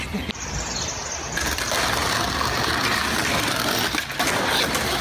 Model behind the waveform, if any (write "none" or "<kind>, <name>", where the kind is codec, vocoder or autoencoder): none